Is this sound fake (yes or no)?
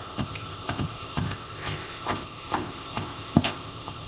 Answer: yes